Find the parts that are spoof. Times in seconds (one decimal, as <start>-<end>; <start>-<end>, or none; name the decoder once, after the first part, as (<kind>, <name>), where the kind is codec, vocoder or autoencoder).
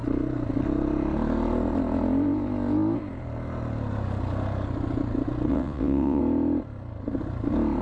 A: 5.5-6.2 (vocoder, WaveNeXt)